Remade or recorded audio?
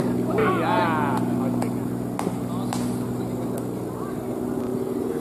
recorded